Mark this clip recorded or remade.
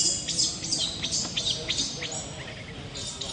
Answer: recorded